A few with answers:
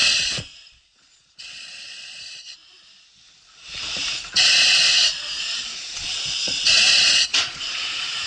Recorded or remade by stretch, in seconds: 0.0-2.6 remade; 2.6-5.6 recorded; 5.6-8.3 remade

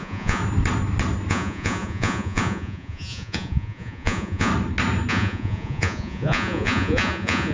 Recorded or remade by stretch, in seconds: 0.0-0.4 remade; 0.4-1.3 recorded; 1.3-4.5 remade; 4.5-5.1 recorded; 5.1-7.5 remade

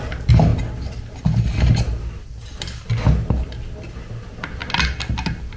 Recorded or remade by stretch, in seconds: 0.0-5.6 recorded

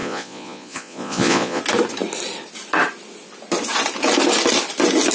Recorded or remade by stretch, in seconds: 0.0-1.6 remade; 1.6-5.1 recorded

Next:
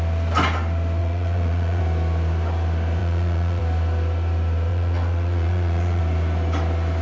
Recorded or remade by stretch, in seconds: 0.0-1.0 recorded; 1.0-1.8 remade; 1.8-3.0 recorded; 3.0-3.6 remade; 3.6-4.7 recorded; 4.7-6.0 remade; 6.0-7.0 recorded